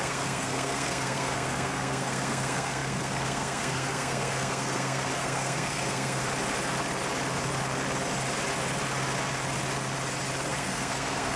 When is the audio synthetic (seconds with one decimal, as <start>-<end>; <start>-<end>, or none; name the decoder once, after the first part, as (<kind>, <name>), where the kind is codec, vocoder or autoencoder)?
0.0-6.2 (codec, SNAC); 10.5-11.4